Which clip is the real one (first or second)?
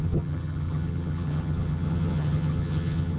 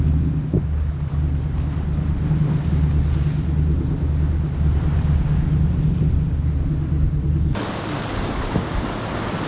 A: second